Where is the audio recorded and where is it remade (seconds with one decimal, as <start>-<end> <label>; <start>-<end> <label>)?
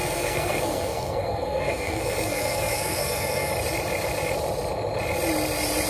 0.0-3.5 remade; 3.5-5.9 recorded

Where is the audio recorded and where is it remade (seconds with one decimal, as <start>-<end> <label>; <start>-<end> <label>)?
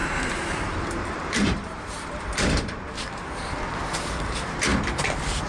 0.0-3.3 remade; 3.3-4.7 recorded; 4.7-5.5 remade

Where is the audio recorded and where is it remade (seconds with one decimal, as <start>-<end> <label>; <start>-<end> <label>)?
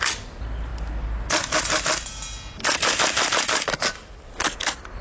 0.0-5.0 recorded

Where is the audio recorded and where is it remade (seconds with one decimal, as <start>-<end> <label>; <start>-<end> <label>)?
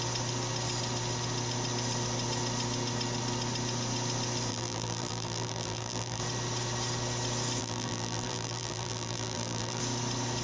0.0-4.5 recorded; 4.5-6.2 remade; 6.2-7.6 recorded; 7.6-9.8 remade; 9.8-10.4 recorded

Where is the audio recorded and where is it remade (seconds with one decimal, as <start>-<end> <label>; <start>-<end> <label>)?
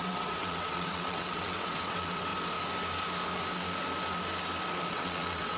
0.0-2.3 remade; 2.3-4.9 recorded; 4.9-5.6 remade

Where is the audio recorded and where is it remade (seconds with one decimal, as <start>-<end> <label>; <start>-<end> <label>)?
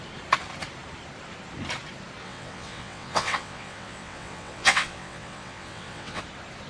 0.0-2.2 recorded; 2.2-6.2 remade; 6.2-6.7 recorded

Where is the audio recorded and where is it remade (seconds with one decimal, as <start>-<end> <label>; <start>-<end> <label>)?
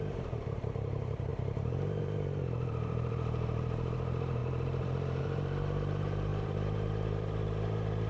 0.0-8.1 remade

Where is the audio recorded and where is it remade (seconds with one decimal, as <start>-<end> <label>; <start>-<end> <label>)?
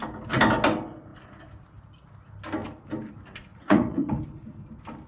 0.0-3.5 recorded; 3.5-4.2 remade; 4.2-5.1 recorded